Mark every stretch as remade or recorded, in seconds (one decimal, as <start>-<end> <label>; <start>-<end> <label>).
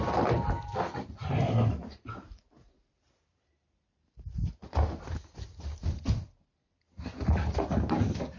0.0-8.4 recorded